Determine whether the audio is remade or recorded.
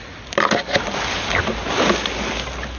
recorded